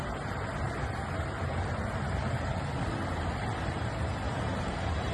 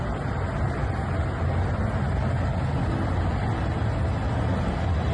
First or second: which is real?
second